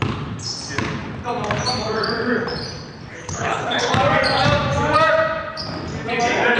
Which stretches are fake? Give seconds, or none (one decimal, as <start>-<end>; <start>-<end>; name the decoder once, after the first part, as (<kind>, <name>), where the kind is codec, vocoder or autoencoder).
3.1-3.9 (codec, HILCodec)